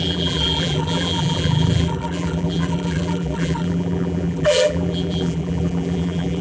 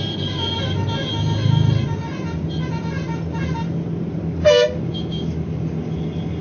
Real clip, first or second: second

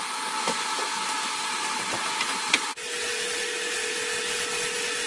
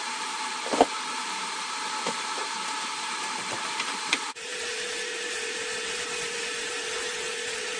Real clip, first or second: first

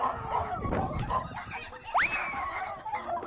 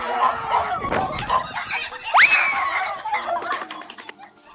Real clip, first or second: second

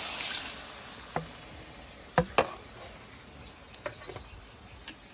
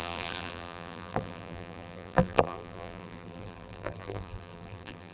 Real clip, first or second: first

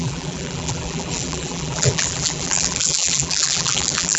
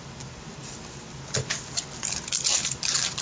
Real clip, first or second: second